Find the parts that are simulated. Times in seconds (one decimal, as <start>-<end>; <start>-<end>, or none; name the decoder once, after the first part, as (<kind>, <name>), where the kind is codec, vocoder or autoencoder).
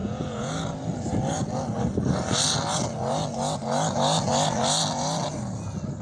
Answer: 0.0-0.5 (vocoder, Vocos)